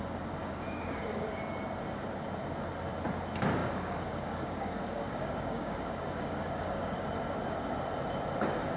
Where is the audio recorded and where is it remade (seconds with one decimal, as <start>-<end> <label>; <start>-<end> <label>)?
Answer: 0.0-0.4 recorded; 0.4-1.4 remade; 1.4-3.6 recorded; 3.6-7.1 remade; 7.1-8.8 recorded